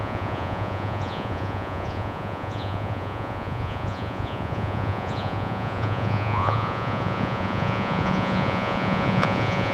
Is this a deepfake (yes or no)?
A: yes